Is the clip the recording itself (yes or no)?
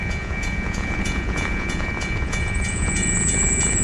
no